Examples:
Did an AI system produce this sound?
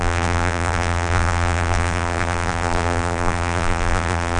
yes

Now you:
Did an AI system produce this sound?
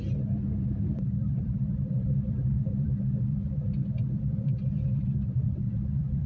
yes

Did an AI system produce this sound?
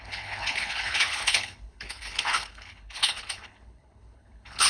yes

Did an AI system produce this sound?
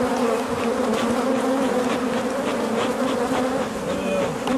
no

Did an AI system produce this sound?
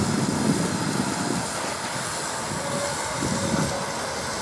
no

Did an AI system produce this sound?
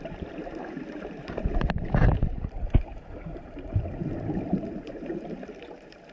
yes